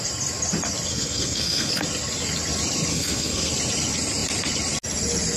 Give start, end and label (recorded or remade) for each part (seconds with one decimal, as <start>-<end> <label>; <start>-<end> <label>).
0.0-0.9 recorded; 0.9-1.7 remade; 1.7-2.9 recorded; 2.9-3.5 remade; 3.5-5.4 recorded